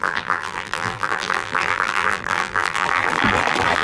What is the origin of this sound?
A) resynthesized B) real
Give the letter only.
A